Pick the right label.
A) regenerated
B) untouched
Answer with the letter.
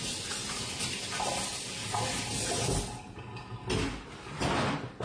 B